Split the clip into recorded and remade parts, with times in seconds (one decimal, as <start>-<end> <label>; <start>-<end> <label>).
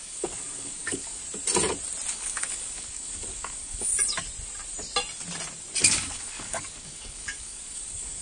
0.0-1.2 remade; 1.2-2.1 recorded; 2.1-3.9 remade; 3.9-5.8 recorded; 5.8-8.2 remade